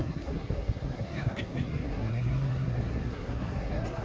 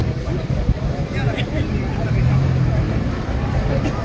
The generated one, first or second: first